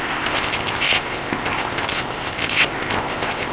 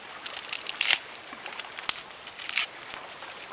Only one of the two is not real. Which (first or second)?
first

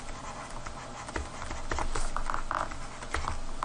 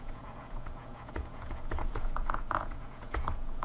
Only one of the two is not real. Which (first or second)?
second